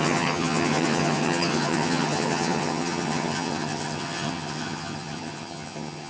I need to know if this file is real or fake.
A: fake